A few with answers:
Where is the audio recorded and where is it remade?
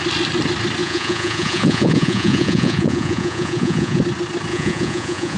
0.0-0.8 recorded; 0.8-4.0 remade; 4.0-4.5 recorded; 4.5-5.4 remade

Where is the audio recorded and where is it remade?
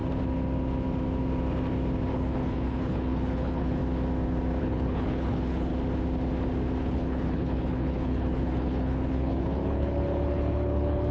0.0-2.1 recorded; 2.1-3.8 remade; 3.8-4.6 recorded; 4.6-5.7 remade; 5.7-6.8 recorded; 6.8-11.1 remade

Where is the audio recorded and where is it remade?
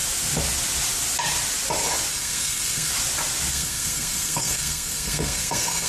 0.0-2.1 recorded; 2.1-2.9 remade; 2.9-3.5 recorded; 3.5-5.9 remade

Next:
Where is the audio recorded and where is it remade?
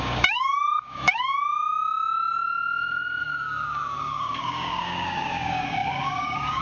0.0-1.3 remade; 1.3-3.2 recorded; 3.2-6.6 remade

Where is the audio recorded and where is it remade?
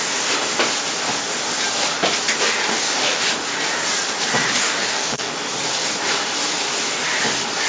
0.0-2.7 recorded; 2.7-3.2 remade; 3.2-4.6 recorded; 4.6-5.3 remade; 5.3-7.7 recorded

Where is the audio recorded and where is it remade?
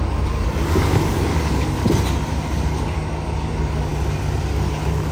0.0-1.8 remade; 1.8-2.6 recorded; 2.6-3.9 remade; 3.9-4.4 recorded; 4.4-5.1 remade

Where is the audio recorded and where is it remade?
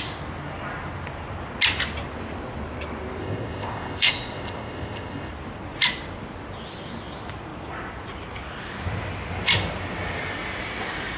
0.0-3.2 recorded; 3.2-5.3 remade; 5.3-11.2 recorded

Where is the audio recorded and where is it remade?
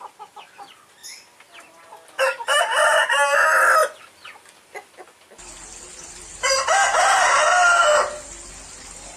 0.0-9.2 recorded